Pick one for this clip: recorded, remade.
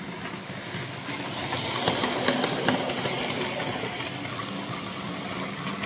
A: recorded